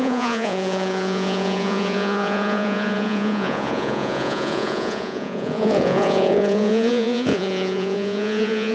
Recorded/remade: remade